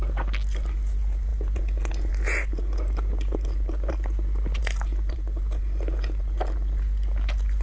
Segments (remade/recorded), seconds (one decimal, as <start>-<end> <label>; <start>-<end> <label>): 0.0-7.6 recorded